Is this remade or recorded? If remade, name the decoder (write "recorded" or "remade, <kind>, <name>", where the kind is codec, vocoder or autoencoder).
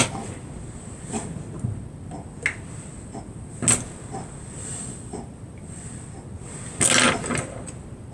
recorded